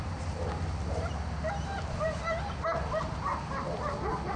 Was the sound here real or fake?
real